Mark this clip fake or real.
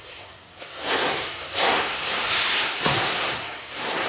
fake